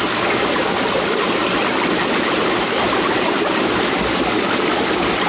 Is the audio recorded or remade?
recorded